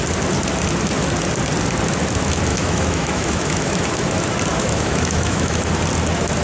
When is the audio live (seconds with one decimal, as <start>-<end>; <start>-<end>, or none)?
0.0-2.5; 3.8-4.5; 5.7-6.4